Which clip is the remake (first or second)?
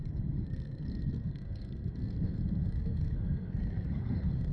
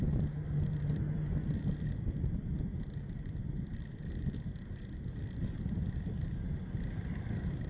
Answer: first